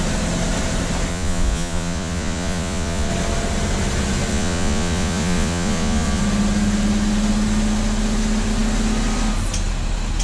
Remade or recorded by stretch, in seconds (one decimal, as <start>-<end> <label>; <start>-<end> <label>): 0.0-1.1 recorded; 1.1-3.1 remade; 3.1-4.3 recorded; 4.3-6.2 remade; 6.2-10.2 recorded